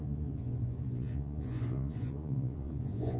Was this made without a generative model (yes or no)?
no